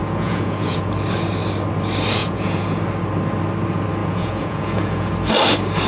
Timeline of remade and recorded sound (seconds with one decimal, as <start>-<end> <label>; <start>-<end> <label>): 0.0-0.9 remade; 0.9-2.2 recorded; 2.2-2.8 remade; 2.8-4.0 recorded; 4.0-5.1 remade; 5.1-5.9 recorded